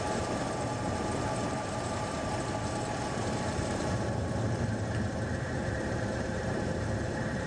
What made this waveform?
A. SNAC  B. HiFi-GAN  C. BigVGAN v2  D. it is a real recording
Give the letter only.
C